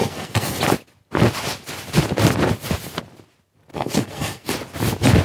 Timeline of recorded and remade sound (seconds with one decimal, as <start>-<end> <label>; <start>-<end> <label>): 0.0-0.6 remade; 0.6-3.7 recorded; 3.7-4.5 remade; 4.5-5.2 recorded